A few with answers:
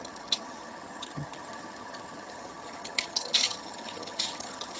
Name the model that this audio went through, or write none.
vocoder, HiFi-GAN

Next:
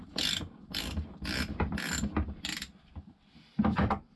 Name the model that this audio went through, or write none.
none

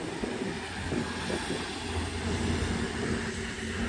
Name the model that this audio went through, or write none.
none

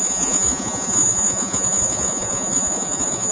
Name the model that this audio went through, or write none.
vocoder, Vocos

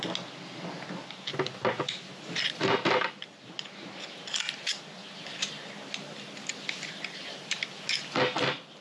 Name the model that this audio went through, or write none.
none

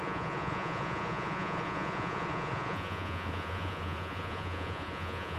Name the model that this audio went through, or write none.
vocoder, Vocos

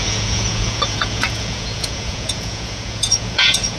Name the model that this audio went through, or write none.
vocoder, Vocos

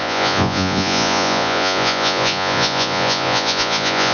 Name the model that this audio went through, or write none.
vocoder, Vocos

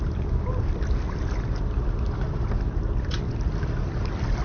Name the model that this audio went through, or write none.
none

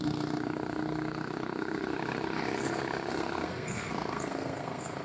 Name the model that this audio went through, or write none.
codec, SNAC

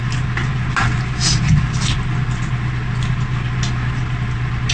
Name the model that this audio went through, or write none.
none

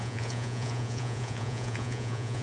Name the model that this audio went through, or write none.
vocoder, Vocos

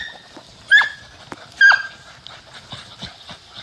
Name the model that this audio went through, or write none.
none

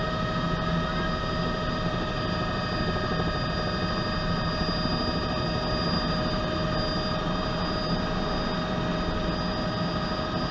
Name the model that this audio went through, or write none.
none